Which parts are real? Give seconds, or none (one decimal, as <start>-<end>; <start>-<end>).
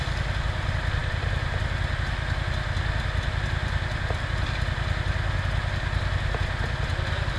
0.0-7.4